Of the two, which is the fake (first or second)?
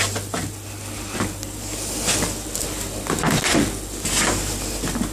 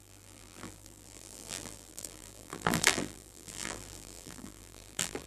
second